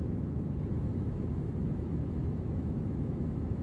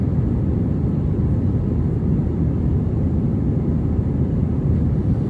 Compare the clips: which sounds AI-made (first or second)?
first